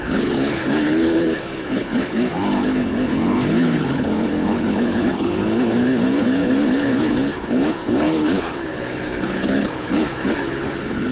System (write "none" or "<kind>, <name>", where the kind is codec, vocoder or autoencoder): codec, HILCodec